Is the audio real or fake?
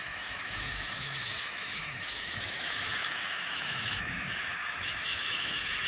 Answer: fake